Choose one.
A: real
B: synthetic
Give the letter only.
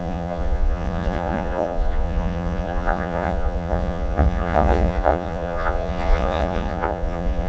B